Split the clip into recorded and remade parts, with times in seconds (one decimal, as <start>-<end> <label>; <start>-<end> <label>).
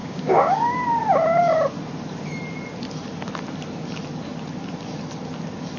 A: 0.0-0.8 remade; 0.8-5.8 recorded